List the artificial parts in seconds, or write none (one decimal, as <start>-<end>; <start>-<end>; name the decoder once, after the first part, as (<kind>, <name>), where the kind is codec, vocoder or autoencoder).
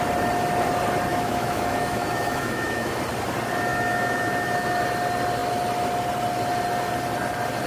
1.1-2.9 (autoencoder, DAC-VAE); 3.7-4.8